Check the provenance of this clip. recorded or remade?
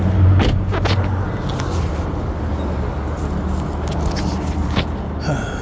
recorded